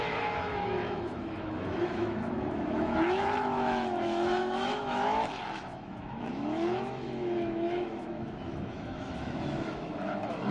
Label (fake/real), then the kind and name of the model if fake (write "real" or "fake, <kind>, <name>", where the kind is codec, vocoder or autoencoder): fake, autoencoder, DAC-VAE